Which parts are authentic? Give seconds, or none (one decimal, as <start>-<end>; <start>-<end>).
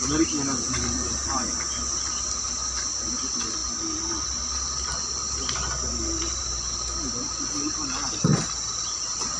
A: 0.0-3.6; 6.4-8.3; 8.9-9.4